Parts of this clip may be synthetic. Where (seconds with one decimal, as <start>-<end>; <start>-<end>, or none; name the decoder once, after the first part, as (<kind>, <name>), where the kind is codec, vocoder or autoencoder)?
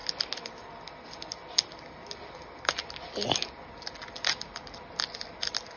none